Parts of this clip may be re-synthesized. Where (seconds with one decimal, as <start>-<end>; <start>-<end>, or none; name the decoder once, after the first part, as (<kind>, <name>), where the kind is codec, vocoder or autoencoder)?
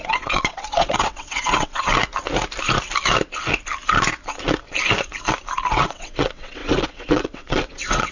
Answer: 0.0-1.9 (vocoder, WaveNeXt); 5.7-8.1